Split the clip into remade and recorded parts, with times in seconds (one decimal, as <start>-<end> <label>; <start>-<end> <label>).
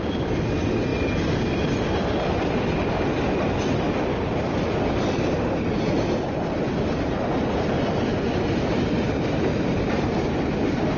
0.0-11.0 recorded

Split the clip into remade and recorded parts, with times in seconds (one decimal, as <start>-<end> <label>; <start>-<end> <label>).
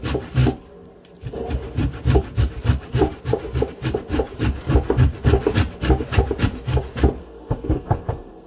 0.0-7.2 recorded; 7.2-8.5 remade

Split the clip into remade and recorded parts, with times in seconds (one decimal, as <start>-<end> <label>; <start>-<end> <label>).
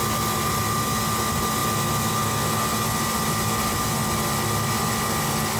0.0-5.6 recorded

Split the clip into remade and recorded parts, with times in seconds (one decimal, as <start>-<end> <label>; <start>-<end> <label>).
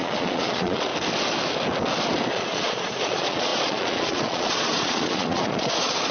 0.0-0.9 remade; 0.9-2.3 recorded; 2.3-6.1 remade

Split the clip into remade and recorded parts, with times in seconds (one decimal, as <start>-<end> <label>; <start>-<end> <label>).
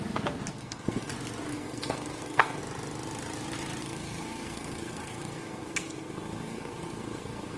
0.0-0.5 recorded; 0.5-1.1 remade; 1.1-1.5 recorded; 1.5-2.6 remade; 2.6-3.8 recorded; 3.8-7.6 remade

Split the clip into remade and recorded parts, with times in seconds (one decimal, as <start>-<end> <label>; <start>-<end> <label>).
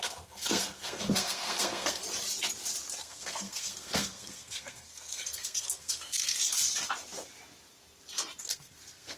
0.0-2.0 remade; 2.0-3.0 recorded; 3.0-6.4 remade; 6.4-8.4 recorded; 8.4-9.2 remade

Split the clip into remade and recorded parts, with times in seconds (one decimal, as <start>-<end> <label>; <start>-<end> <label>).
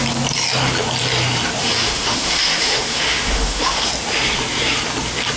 0.0-1.6 recorded; 1.6-3.9 remade; 3.9-5.4 recorded